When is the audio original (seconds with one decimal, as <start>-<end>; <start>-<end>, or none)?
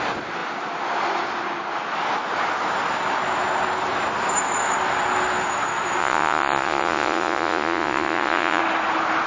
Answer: 0.0-6.0; 8.6-9.3